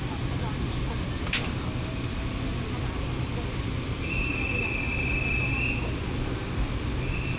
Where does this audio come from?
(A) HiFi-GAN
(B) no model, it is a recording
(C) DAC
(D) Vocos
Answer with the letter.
B